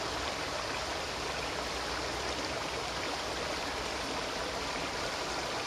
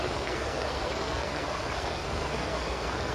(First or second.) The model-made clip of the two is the second